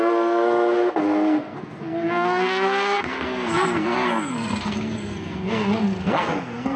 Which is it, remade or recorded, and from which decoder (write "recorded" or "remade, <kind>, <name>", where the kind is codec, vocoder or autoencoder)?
remade, codec, SNAC